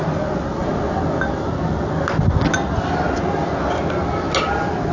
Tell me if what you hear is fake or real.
real